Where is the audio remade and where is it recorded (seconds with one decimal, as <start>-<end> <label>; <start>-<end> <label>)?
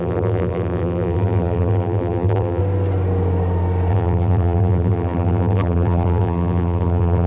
0.0-2.6 remade; 2.6-3.9 recorded; 3.9-7.3 remade